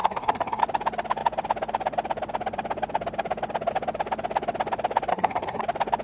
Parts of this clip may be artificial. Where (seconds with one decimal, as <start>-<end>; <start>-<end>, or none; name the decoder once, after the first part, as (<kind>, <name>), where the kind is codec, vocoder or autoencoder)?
0.0-0.6 (codec, SNAC); 5.1-5.6